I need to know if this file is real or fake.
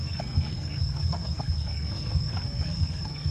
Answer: fake